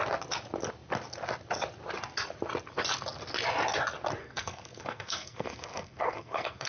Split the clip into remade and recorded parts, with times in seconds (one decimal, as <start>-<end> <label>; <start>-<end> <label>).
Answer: 0.0-4.2 recorded; 4.2-6.7 remade